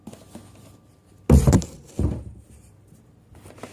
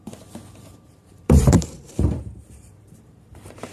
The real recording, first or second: first